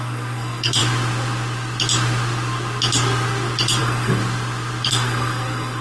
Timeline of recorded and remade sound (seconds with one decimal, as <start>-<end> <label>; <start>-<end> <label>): 0.0-0.8 remade; 0.8-3.8 recorded; 3.8-4.2 remade; 4.2-4.9 recorded; 4.9-5.8 remade